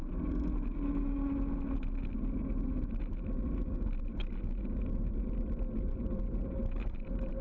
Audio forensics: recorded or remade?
recorded